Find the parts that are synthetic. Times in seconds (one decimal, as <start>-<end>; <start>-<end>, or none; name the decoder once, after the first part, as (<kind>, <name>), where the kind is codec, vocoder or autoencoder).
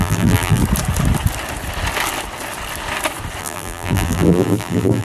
0.0-0.6 (vocoder, BigVGAN v2); 3.4-5.0